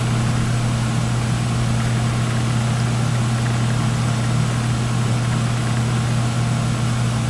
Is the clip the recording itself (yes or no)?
yes